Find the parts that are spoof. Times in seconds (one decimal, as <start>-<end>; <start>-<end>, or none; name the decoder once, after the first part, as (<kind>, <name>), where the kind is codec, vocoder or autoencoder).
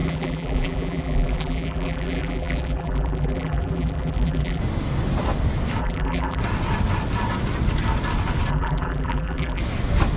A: 0.0-4.6 (vocoder, BigVGAN v2); 5.8-6.4; 8.5-9.6